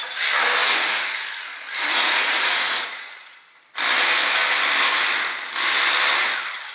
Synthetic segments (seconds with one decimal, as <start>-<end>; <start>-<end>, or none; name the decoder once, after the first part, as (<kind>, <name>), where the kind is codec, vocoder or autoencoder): 0.6-1.2 (vocoder, Vocos); 1.9-3.4